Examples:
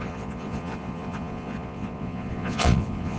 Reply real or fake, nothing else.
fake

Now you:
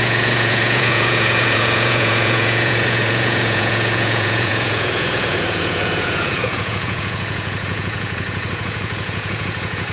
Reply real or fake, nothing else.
fake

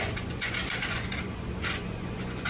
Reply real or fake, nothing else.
fake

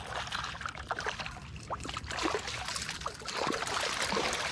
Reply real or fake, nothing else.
real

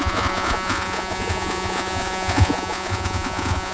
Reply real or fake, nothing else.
fake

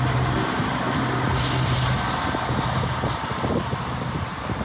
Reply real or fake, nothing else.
real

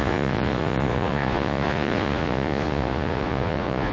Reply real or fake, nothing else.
fake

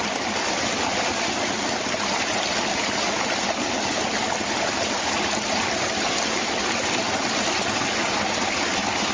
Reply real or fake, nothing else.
real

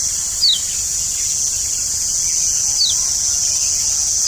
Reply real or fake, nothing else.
real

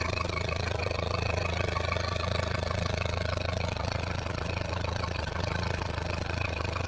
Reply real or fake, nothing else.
fake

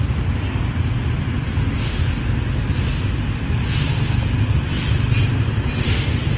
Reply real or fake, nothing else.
real